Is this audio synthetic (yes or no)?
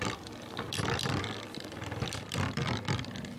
yes